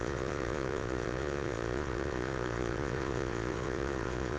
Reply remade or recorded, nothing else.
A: remade